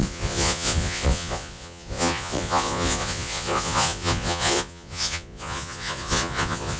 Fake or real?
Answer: fake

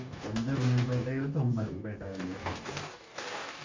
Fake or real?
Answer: fake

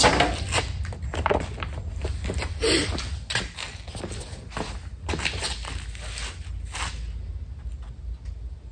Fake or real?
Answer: real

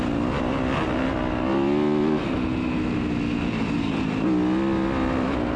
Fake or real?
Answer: real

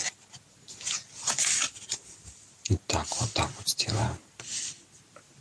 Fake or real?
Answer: real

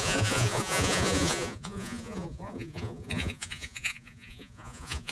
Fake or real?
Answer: fake